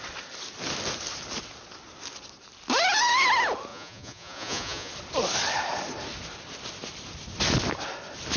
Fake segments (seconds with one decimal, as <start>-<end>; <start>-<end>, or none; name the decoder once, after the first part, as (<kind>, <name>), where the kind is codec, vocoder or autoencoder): 3.7-4.9 (vocoder, Vocos)